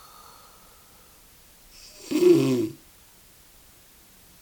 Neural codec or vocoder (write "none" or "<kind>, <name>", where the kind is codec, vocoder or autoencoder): none